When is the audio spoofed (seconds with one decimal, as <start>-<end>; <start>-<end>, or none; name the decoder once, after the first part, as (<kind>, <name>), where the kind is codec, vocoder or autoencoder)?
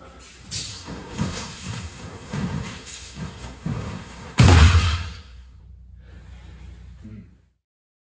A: 0.7-5.6 (codec, SNAC)